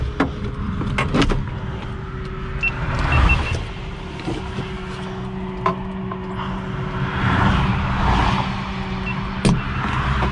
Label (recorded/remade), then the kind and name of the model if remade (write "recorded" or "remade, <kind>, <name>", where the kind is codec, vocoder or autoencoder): recorded